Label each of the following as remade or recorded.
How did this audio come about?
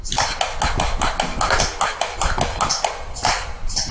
recorded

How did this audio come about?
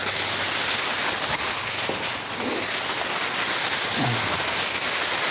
recorded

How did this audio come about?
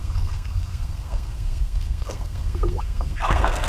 remade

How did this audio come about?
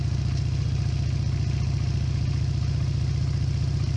recorded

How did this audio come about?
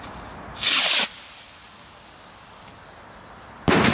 recorded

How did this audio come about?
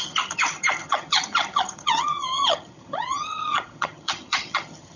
remade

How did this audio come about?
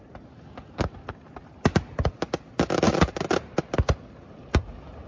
recorded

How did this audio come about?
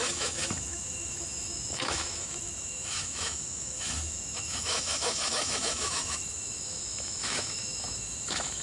remade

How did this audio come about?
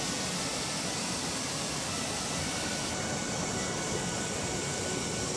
recorded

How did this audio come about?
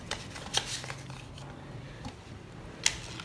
recorded